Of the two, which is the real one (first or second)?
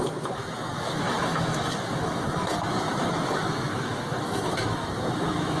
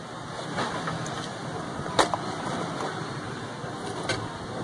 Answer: second